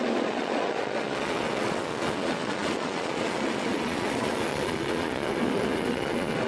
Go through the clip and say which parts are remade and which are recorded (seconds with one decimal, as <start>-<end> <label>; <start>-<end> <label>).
0.0-6.5 remade